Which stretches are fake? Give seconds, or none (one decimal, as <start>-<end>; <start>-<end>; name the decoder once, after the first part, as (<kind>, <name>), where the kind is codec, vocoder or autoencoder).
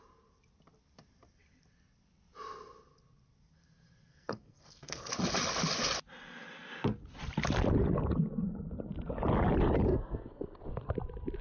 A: 4.1-5.1 (codec, SNAC); 9.9-10.6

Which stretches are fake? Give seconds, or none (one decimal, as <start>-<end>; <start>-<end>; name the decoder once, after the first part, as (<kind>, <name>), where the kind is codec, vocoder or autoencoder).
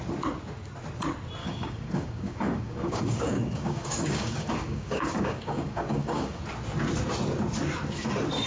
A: 1.4-6.4 (codec, DAC)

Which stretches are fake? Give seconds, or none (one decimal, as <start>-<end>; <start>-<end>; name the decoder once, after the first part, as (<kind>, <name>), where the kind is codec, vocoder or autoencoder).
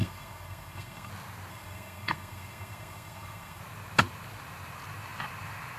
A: 0.0-1.1 (codec, SNAC); 1.5-3.6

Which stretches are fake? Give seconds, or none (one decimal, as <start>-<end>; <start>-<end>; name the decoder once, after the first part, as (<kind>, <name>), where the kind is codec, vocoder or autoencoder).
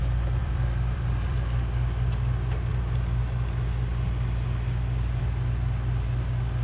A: 0.4-1.6 (vocoder, BigVGAN v2)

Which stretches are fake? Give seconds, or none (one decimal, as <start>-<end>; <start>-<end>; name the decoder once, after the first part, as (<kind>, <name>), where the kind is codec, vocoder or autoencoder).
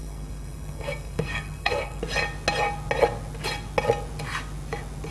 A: 0.0-2.0 (codec, SNAC)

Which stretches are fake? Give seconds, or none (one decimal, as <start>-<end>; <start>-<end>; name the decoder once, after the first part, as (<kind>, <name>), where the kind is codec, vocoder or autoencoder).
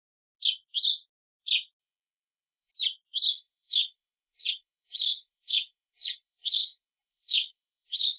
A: 1.8-2.7 (codec, HILCodec); 3.3-8.2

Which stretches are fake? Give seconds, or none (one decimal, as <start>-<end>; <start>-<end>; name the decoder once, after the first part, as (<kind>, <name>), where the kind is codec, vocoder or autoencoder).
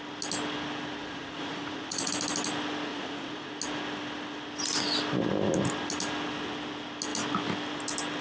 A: 1.0-2.1 (vocoder, Vocos); 2.9-3.5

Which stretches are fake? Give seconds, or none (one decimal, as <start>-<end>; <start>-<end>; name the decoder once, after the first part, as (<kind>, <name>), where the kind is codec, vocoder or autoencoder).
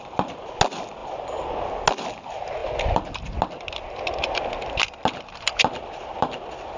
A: none